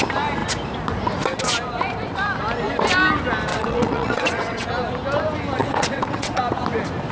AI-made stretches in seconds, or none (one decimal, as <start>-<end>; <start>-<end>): 3.5-4.7; 5.6-6.4